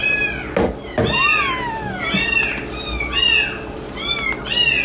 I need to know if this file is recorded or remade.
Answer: recorded